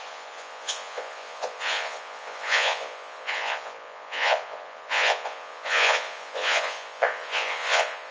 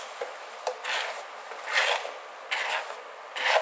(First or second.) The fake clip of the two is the first